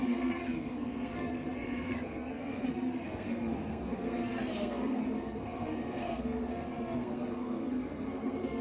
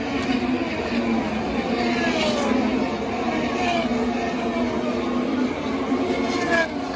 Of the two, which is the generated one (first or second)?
first